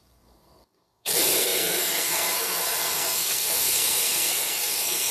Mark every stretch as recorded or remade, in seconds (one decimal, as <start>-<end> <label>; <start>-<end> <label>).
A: 0.0-5.1 remade